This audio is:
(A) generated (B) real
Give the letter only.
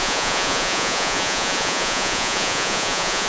A